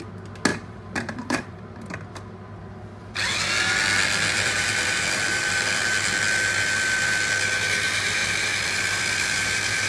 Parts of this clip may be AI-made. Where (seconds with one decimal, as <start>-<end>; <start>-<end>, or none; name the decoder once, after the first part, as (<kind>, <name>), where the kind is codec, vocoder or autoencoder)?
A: 0.5-3.4 (vocoder, BigVGAN v2); 4.3-5.8; 8.2-9.9